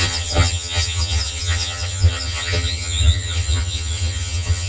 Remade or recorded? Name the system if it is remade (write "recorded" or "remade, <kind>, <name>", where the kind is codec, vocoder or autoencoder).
remade, vocoder, HiFi-GAN